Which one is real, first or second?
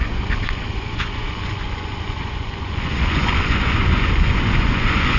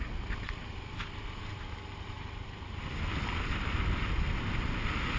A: second